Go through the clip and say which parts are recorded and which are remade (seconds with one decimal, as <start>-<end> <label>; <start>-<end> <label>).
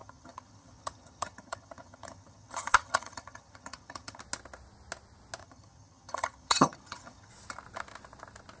0.0-4.2 remade; 4.2-5.4 recorded; 5.4-7.3 remade; 7.3-8.6 recorded